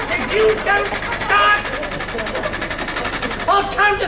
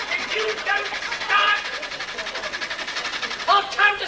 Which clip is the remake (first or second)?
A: second